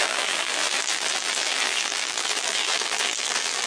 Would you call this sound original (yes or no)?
no